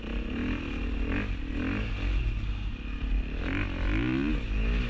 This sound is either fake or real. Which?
real